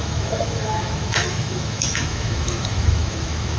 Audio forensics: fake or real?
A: fake